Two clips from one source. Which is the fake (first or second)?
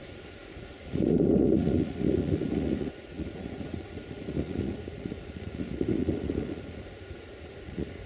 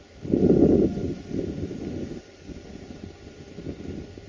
first